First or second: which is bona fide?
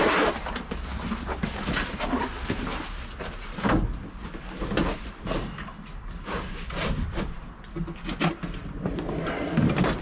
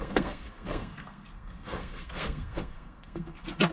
first